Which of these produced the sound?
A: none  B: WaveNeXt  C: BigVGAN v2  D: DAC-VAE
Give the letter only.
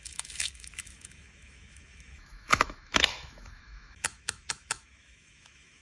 D